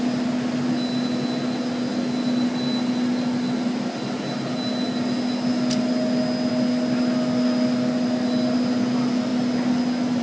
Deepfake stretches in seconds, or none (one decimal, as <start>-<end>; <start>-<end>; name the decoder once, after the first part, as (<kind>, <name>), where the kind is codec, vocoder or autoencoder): none